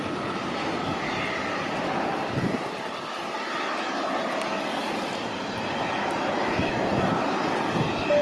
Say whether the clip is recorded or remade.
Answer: recorded